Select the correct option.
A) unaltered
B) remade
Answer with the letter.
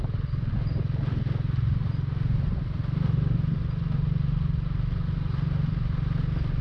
A